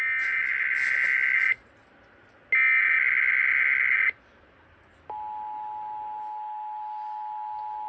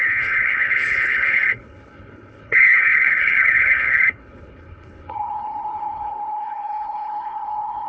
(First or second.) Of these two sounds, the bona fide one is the first